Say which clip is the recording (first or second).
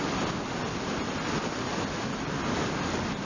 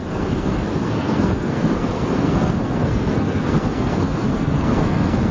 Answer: first